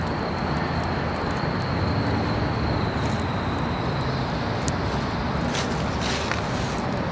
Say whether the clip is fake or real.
real